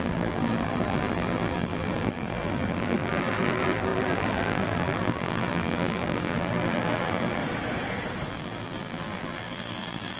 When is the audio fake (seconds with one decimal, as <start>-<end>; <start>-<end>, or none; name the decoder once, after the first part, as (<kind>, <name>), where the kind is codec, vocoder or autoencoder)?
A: 0.0-7.4 (vocoder, BigVGAN v2); 8.3-10.2